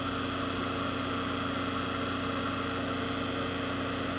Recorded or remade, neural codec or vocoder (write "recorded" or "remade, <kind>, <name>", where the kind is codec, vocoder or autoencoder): recorded